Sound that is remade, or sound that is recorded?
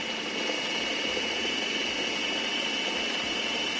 recorded